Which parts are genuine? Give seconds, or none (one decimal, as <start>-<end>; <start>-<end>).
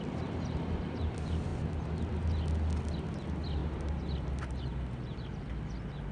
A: 1.5-3.0; 3.6-6.1